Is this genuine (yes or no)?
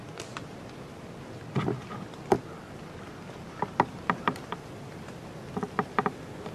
yes